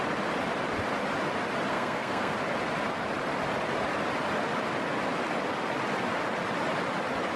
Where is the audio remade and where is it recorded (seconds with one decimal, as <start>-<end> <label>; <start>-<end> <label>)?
0.0-1.7 recorded; 1.7-2.3 remade; 2.3-7.4 recorded